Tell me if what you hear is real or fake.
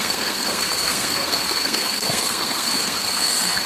fake